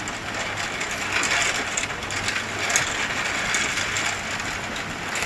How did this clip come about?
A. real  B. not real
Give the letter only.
A